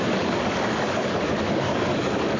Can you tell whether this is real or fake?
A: fake